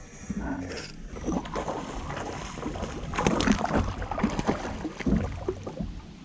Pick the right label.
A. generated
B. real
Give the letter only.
B